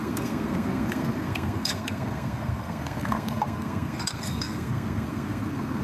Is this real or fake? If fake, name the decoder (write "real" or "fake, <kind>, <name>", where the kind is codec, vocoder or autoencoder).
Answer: fake, codec, SNAC